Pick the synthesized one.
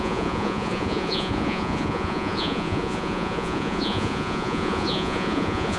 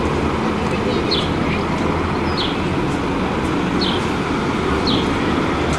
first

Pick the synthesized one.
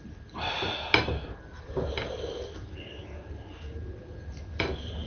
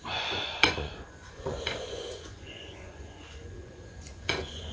second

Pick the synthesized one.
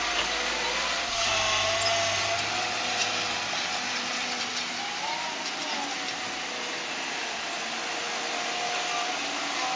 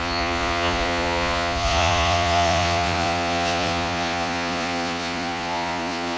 second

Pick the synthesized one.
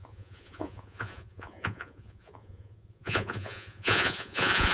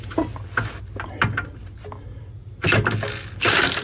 first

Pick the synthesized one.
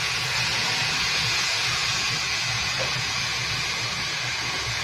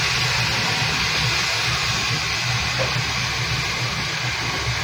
first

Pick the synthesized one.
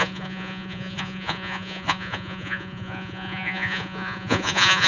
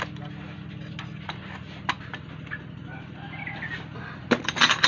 first